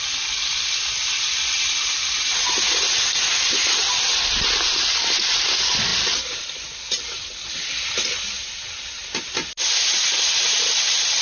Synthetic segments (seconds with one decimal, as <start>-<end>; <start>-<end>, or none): none